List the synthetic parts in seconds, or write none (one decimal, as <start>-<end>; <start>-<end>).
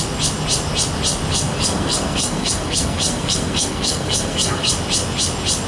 1.3-4.7